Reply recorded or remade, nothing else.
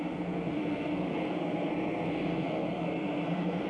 remade